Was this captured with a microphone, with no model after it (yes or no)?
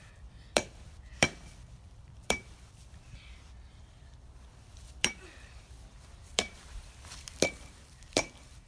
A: no